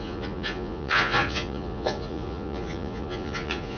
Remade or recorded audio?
remade